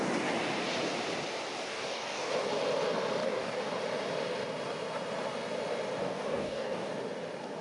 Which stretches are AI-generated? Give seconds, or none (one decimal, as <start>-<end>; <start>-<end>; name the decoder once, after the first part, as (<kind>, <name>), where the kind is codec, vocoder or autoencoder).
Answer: 1.7-2.3 (codec, DAC); 3.2-3.7; 6.0-6.9